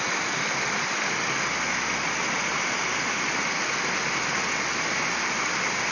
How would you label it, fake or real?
real